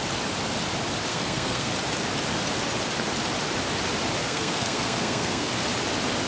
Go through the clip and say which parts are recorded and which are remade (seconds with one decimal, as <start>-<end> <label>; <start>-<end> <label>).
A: 0.0-1.1 recorded; 1.1-1.7 remade; 1.7-4.2 recorded; 4.2-5.5 remade; 5.5-6.3 recorded